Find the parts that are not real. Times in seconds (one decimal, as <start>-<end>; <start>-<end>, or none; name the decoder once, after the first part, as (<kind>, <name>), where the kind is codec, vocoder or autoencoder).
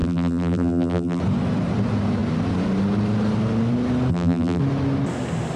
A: 0.0-1.2 (vocoder, BigVGAN v2); 4.1-4.6